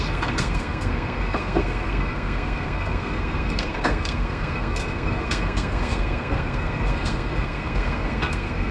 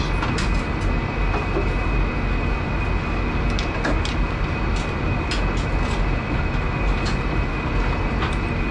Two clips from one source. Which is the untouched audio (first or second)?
second